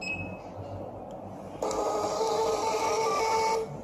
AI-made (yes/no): no